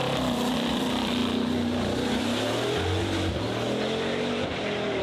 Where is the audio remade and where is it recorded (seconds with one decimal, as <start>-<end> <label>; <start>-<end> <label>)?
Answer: 0.0-1.2 remade; 1.2-4.2 recorded; 4.2-5.0 remade